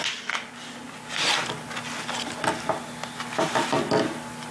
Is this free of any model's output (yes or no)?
yes